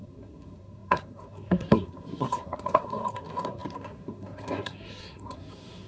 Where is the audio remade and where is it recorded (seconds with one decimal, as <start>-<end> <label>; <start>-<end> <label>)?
0.0-5.9 remade

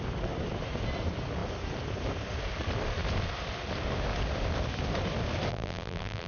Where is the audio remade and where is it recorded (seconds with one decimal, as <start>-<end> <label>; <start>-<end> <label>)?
0.0-5.5 recorded; 5.5-6.3 remade

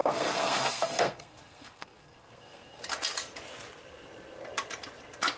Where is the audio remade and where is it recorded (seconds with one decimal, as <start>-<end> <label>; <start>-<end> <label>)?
0.0-2.8 remade; 2.8-5.4 recorded

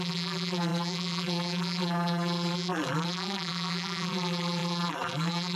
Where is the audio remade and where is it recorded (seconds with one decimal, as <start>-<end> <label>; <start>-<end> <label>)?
0.0-5.6 remade

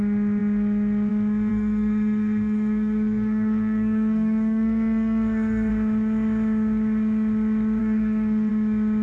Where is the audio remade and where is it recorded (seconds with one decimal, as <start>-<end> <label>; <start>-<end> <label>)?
0.0-1.5 recorded; 1.5-5.7 remade; 5.7-7.8 recorded; 7.8-8.5 remade; 8.5-9.0 recorded

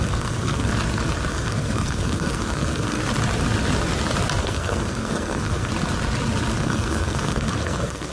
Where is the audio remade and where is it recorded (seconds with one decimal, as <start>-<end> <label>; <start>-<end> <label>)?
0.0-0.7 remade; 0.7-1.3 recorded; 1.3-3.0 remade; 3.0-4.4 recorded; 4.4-5.7 remade; 5.7-6.6 recorded; 6.6-8.1 remade

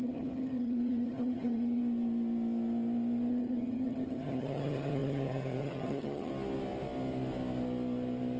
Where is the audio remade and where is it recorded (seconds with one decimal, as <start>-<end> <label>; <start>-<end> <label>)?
0.0-1.8 remade; 1.8-3.3 recorded; 3.3-6.3 remade; 6.3-8.4 recorded